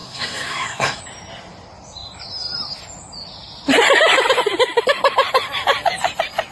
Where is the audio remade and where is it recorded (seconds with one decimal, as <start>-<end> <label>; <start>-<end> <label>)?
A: 0.0-1.0 remade; 1.0-6.5 recorded

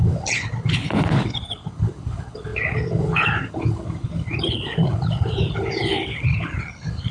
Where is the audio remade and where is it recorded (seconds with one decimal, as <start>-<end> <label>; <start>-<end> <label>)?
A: 0.0-7.1 remade

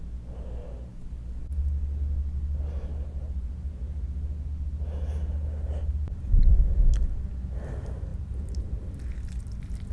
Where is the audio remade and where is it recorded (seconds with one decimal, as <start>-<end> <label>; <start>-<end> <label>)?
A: 0.0-8.1 recorded; 8.1-8.7 remade; 8.7-9.9 recorded

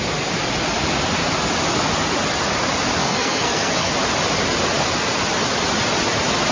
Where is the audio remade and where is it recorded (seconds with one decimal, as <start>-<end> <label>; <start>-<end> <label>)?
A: 0.0-3.0 recorded; 3.0-3.9 remade; 3.9-6.5 recorded

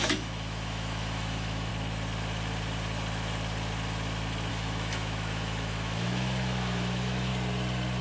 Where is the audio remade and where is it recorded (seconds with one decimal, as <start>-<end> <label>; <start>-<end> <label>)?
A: 0.0-1.7 remade; 1.7-4.5 recorded; 4.5-7.3 remade; 7.3-8.0 recorded